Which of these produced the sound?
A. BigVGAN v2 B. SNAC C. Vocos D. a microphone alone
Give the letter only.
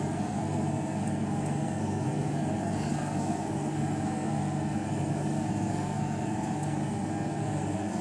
B